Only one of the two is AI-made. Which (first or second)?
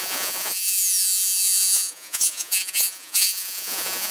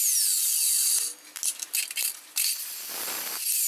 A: first